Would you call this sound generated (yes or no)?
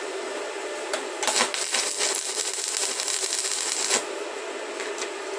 no